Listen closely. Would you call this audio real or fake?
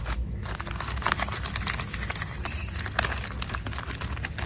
real